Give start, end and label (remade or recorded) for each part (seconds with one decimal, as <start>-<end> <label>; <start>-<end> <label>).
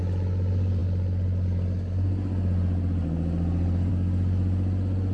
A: 0.0-5.1 recorded